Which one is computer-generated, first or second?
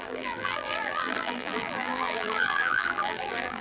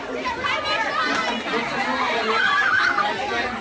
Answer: first